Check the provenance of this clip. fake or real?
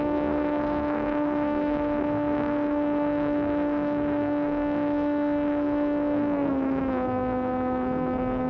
fake